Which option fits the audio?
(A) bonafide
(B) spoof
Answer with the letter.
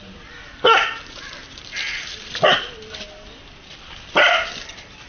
B